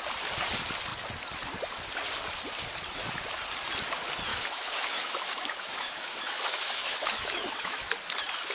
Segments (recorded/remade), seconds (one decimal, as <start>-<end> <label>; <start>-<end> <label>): 0.0-4.3 recorded; 4.3-7.8 remade; 7.8-8.5 recorded

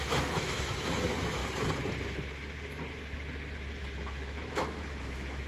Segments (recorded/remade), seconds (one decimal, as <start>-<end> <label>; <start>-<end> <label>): 0.0-1.4 remade; 1.4-3.8 recorded; 3.8-5.5 remade

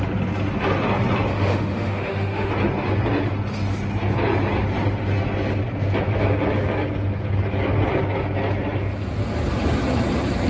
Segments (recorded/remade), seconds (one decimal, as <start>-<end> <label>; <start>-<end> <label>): 0.0-1.3 recorded; 1.3-2.5 remade; 2.5-10.5 recorded

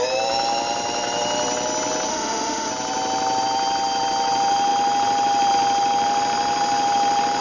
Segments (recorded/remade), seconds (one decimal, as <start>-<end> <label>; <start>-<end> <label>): 0.0-2.1 recorded; 2.1-2.7 remade; 2.7-7.4 recorded

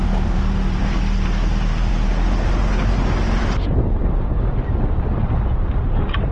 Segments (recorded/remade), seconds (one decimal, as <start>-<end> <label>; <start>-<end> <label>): 0.0-6.3 recorded

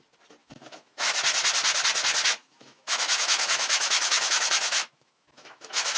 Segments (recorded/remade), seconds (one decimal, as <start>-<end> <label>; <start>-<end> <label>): 0.0-0.4 recorded; 0.4-1.2 remade; 1.2-2.4 recorded; 2.4-6.0 remade

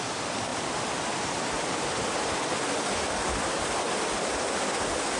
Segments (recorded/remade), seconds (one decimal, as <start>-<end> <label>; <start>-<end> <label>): 0.0-5.2 recorded